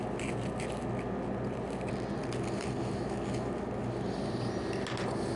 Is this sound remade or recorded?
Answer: recorded